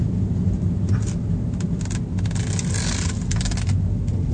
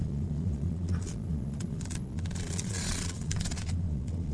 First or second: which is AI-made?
second